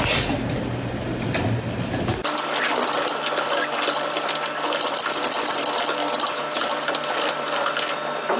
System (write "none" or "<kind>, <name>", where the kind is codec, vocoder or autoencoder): none